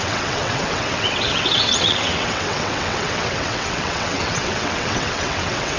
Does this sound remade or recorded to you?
remade